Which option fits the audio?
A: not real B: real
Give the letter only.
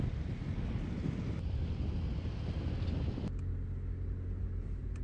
B